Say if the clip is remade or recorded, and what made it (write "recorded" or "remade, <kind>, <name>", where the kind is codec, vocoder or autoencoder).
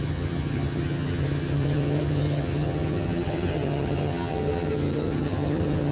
remade, vocoder, HiFi-GAN